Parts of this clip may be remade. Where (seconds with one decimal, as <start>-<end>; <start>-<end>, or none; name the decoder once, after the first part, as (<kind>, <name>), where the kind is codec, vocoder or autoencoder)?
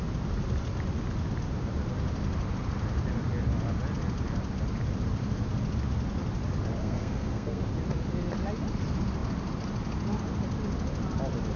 6.8-7.6 (codec, SNAC)